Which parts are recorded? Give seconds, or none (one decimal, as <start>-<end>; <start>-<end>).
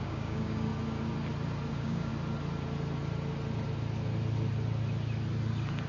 0.7-1.7; 2.1-5.9